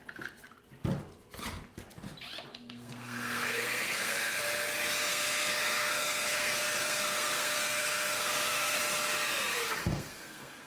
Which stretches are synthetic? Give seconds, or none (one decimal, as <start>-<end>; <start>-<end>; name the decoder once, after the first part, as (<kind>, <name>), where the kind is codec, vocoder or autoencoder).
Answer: 2.5-4.4 (codec, SNAC); 5.1-8.8; 9.8-10.7

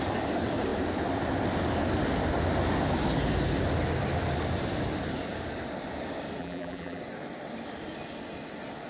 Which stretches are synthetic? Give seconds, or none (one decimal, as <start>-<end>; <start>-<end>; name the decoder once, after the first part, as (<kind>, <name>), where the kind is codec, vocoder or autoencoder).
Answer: 6.4-7.0 (vocoder, BigVGAN v2)

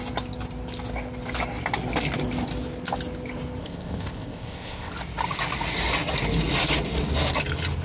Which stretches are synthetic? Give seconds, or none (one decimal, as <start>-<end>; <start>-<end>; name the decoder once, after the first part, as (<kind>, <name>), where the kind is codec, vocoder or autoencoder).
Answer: 3.6-4.9 (codec, ZipCodec)

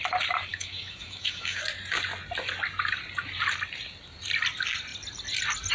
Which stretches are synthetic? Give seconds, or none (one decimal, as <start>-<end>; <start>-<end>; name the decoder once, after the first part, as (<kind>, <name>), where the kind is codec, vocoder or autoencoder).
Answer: 0.5-1.6 (autoencoder, DAC-VAE)

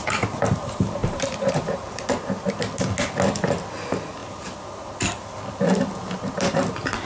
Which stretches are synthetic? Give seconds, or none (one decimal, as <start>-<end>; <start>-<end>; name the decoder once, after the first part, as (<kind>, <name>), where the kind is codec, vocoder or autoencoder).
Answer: 1.0-1.8 (vocoder, BigVGAN v2)

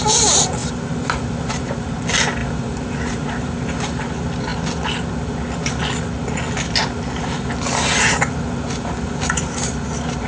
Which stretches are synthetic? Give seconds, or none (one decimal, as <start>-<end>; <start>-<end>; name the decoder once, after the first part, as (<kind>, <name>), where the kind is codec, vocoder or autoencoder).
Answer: 0.6-2.0 (vocoder, BigVGAN v2); 2.4-4.0